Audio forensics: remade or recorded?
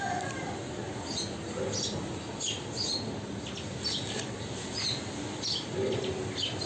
recorded